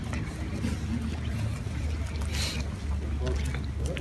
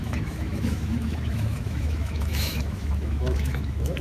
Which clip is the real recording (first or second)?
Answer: first